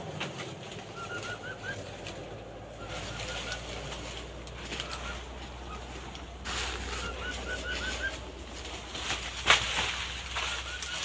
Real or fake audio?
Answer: real